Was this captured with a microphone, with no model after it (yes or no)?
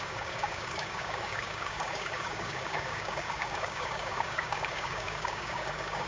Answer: no